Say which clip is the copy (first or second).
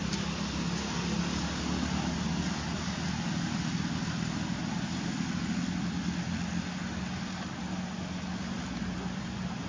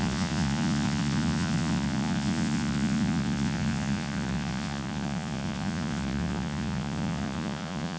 second